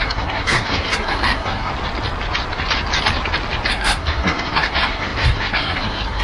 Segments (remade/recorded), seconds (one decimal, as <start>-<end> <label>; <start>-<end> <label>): 0.0-1.7 remade; 1.7-3.7 recorded; 3.7-6.2 remade